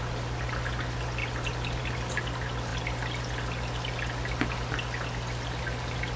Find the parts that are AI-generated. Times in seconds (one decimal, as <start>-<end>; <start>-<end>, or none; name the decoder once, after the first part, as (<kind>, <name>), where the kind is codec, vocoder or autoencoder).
none